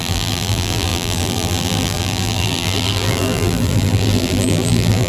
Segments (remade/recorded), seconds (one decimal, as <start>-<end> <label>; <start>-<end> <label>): 0.0-5.1 remade